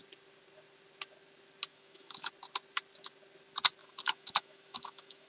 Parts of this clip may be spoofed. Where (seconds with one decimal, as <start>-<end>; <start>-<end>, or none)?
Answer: 1.7-2.3; 3.8-5.3